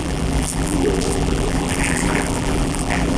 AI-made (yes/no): yes